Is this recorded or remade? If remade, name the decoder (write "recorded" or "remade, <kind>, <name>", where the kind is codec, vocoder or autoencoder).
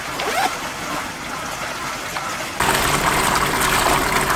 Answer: recorded